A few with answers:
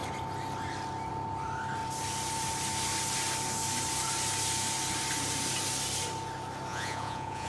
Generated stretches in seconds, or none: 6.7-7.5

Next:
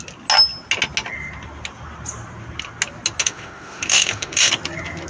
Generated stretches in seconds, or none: 3.2-4.5

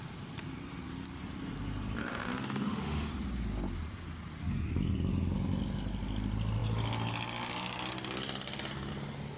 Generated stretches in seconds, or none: 2.0-3.1

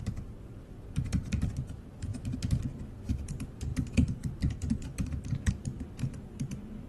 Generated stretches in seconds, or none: 0.0-2.1; 3.1-6.9

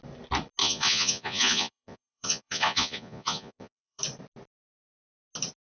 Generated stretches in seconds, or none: 0.6-4.0

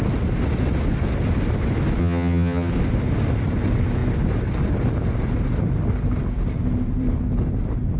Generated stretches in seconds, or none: 2.0-2.7

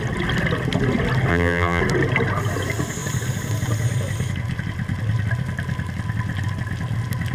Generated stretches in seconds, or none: 1.3-1.8